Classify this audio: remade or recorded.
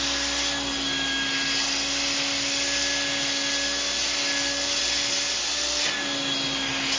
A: recorded